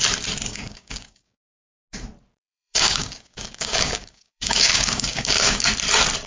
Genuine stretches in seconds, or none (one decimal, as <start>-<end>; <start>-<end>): 0.0-0.5; 1.5-2.4; 5.7-6.3